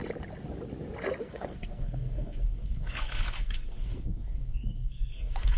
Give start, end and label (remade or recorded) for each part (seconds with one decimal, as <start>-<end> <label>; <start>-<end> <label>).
0.0-1.2 recorded; 1.2-5.6 remade